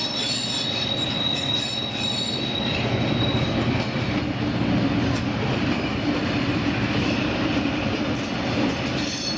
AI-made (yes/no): no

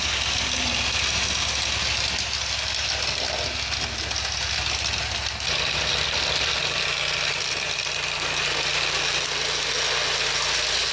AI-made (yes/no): no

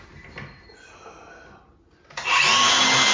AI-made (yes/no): no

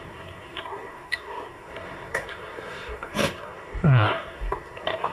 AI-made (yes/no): yes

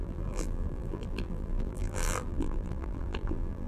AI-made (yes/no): yes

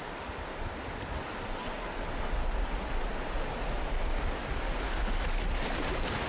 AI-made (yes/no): no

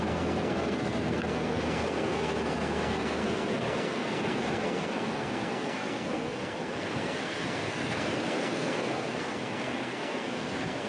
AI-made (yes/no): yes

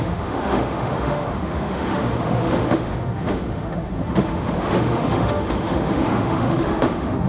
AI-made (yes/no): yes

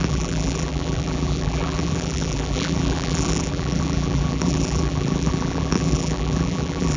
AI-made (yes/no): yes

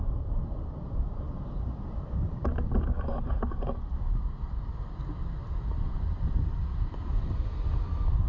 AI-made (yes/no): no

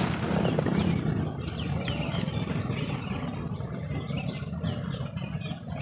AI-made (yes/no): no